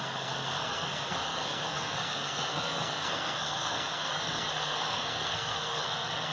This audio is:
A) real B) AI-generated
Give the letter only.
B